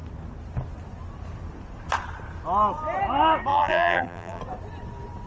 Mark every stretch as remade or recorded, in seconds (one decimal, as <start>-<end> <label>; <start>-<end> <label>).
0.0-3.5 recorded; 3.5-4.4 remade; 4.4-5.3 recorded

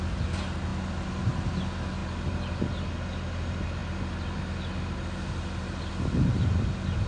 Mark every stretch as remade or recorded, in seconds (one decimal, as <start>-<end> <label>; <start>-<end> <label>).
0.0-7.1 recorded

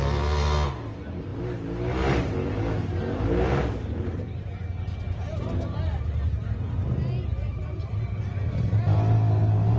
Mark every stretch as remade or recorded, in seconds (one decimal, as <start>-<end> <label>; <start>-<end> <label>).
0.0-9.8 recorded

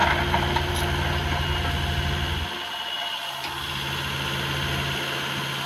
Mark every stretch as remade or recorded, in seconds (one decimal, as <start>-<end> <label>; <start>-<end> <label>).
0.0-5.7 recorded

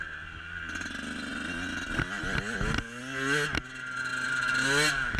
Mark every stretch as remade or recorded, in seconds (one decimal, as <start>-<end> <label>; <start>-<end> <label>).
0.0-5.2 recorded

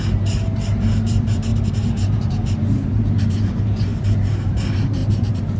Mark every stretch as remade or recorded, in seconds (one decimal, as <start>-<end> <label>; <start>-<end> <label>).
0.0-3.9 remade; 3.9-4.5 recorded; 4.5-5.6 remade

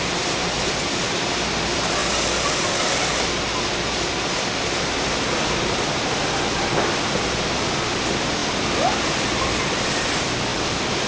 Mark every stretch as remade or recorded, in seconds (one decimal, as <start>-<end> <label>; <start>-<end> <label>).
0.0-2.0 remade; 2.0-7.2 recorded; 7.2-11.1 remade

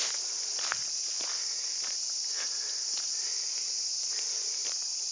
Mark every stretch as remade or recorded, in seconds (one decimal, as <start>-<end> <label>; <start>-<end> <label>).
0.0-0.4 remade; 0.4-3.5 recorded; 3.5-5.1 remade